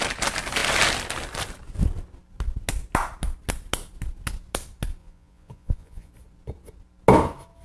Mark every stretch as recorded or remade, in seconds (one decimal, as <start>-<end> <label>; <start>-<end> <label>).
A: 0.0-5.0 recorded; 5.0-6.1 remade; 6.1-7.6 recorded